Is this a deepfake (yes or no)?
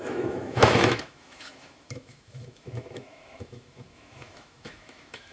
yes